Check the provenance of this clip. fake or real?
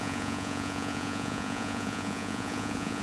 fake